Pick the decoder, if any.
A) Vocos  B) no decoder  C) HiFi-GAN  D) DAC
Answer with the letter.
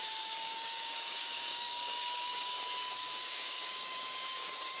D